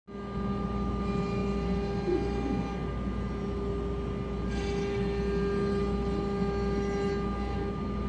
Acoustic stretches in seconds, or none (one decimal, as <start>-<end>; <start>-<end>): 0.0-8.1